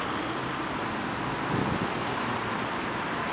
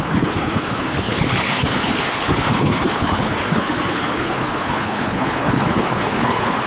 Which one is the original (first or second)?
first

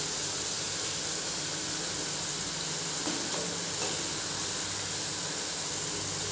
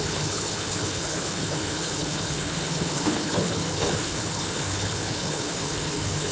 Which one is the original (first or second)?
first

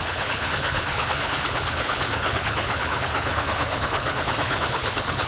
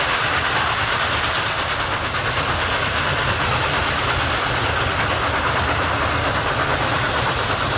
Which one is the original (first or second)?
second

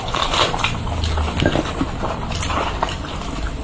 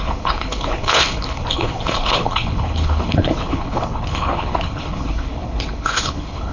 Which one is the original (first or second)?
first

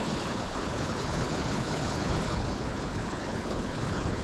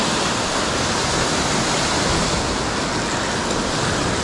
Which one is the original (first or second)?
second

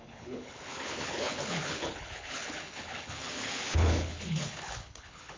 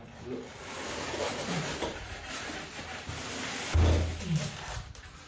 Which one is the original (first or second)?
second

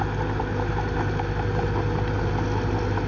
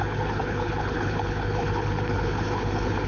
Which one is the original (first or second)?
first